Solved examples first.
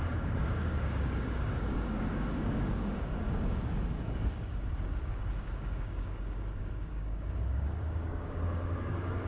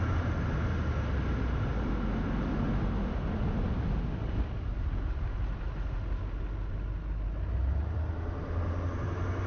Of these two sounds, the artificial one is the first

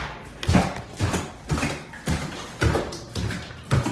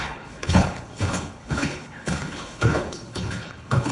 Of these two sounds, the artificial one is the second